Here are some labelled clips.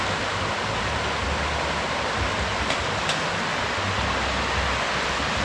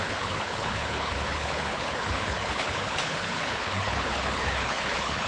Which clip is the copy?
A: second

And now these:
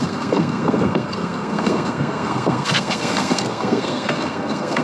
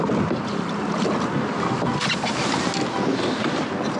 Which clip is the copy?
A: first